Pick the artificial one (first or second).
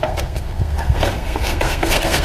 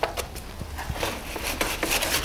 first